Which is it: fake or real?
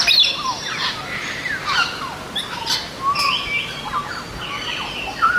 real